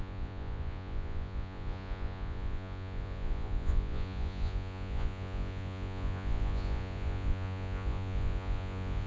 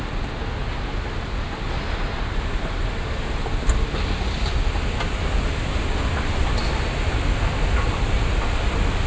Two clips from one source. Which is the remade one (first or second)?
first